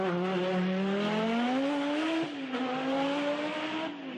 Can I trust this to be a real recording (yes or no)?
yes